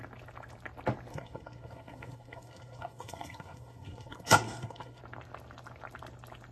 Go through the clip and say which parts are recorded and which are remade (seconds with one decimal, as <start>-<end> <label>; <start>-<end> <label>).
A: 0.0-1.1 recorded; 1.1-5.0 remade; 5.0-6.5 recorded